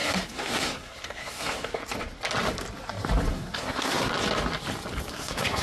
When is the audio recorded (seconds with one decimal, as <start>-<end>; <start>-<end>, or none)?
1.8-3.3; 4.1-5.1